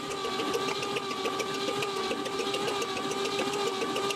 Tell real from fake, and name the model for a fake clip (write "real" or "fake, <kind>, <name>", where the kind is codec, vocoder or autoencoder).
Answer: real